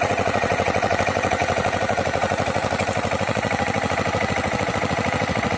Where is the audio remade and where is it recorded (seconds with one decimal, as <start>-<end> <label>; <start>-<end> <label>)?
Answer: 0.0-5.6 remade